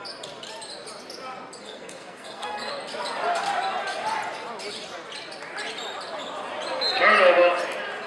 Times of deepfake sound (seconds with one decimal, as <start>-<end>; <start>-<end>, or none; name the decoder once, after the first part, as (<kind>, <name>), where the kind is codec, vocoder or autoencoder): 1.6-2.7 (codec, SNAC)